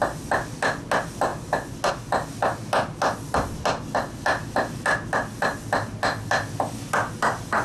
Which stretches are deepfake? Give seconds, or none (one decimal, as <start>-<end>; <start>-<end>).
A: none